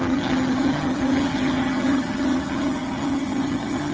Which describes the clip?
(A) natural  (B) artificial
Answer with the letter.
B